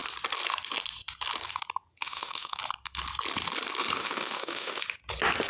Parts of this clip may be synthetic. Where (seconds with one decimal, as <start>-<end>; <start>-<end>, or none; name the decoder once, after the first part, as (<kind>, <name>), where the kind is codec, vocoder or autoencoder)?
2.0-2.6 (autoencoder, DAC-VAE); 4.0-4.8